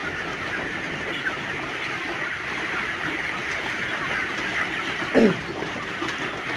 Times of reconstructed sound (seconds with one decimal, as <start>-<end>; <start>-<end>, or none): none